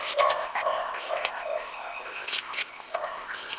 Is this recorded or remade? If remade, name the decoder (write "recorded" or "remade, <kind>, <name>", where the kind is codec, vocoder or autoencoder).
remade, codec, ZipCodec